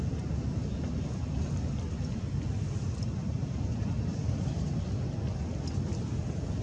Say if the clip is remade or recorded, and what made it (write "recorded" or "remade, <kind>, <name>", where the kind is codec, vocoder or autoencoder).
recorded